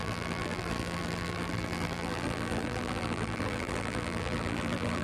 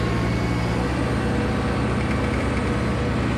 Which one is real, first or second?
second